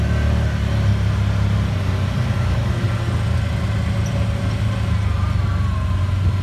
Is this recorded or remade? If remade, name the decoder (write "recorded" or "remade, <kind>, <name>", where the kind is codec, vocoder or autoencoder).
recorded